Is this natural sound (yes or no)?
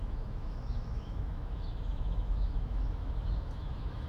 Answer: no